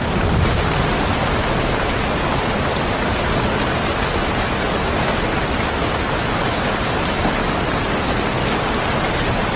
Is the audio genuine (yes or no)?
yes